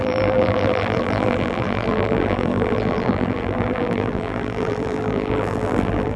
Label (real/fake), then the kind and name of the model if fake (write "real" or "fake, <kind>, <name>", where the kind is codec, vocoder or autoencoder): fake, vocoder, BigVGAN v2